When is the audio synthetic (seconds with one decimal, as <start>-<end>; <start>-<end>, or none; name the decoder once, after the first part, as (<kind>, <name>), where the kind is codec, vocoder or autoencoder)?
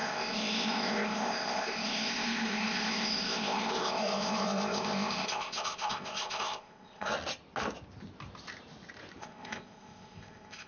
0.0-7.1 (codec, ZipCodec); 9.2-10.7